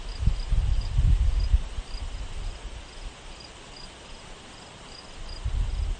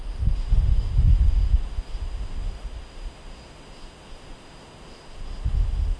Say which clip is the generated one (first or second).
second